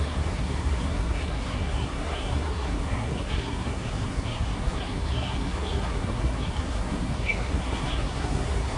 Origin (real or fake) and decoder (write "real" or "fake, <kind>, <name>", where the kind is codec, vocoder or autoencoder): fake, codec, SNAC